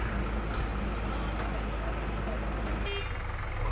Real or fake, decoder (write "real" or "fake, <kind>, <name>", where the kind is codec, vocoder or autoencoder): real